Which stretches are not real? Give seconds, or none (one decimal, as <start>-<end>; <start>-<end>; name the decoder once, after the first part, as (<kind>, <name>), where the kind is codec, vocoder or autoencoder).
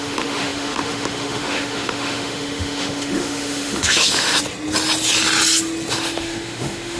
0.0-4.3 (autoencoder, DAC-VAE); 5.9-7.0